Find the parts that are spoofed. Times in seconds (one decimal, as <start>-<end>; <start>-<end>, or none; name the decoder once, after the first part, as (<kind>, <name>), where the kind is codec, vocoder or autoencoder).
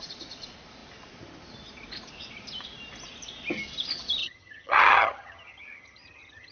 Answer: 4.2-6.5 (vocoder, HiFi-GAN)